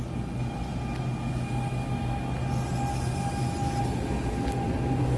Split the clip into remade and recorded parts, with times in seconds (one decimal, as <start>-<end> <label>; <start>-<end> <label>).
0.0-5.2 recorded